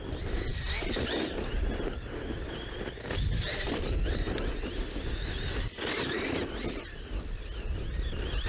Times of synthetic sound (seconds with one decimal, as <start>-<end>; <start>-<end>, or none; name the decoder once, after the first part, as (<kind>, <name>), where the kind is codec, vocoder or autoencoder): none